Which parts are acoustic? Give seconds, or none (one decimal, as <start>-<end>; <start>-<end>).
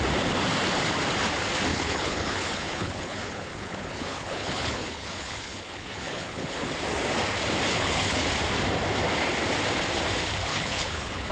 0.0-1.7; 6.7-7.7; 8.3-10.5